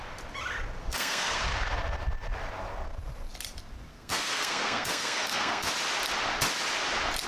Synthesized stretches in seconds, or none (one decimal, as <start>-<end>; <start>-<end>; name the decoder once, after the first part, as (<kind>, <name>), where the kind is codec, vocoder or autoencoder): 0.8-1.4 (codec, SNAC); 3.9-5.7